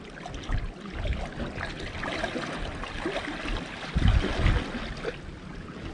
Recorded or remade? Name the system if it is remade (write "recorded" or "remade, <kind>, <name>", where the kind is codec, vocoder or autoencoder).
recorded